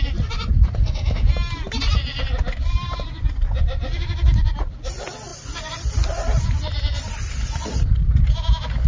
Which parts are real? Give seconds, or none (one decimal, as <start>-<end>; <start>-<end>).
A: 0.0-8.9